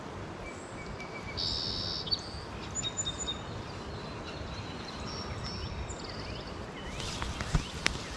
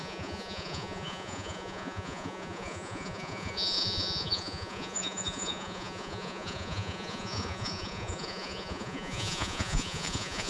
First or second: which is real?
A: first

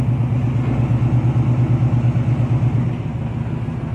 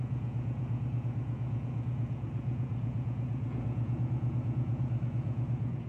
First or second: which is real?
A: first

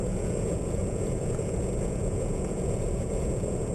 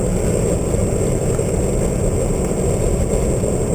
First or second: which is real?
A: second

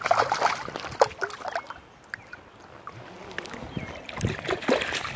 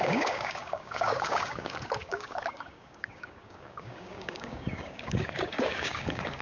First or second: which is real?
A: first